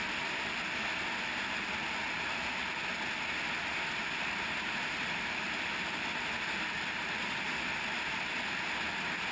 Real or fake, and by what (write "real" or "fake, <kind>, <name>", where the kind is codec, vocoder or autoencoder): real